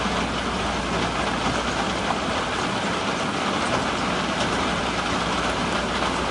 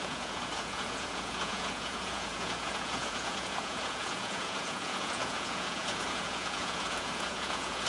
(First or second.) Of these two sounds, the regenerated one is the second